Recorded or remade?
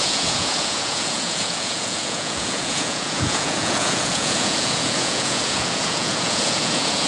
remade